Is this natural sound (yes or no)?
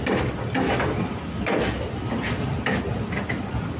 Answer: yes